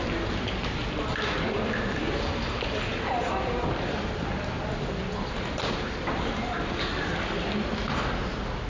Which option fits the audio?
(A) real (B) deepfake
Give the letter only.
A